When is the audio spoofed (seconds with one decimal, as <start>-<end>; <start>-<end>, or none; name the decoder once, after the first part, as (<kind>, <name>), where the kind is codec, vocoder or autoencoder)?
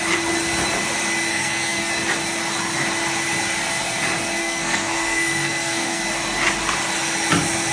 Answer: 1.3-1.9 (codec, SNAC); 4.4-6.0